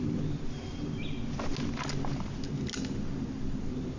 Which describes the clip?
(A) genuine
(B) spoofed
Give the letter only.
A